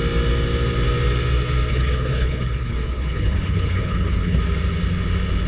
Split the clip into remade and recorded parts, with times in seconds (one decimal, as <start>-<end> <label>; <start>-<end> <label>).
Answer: 0.0-1.7 recorded; 1.7-4.4 remade; 4.4-5.5 recorded